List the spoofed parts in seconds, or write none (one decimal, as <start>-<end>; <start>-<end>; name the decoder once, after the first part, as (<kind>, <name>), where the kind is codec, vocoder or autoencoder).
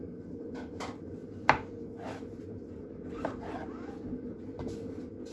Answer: none